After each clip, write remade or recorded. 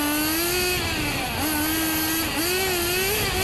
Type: recorded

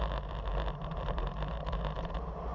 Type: remade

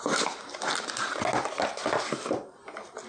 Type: recorded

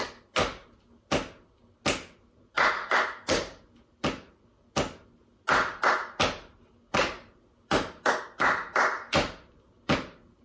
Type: recorded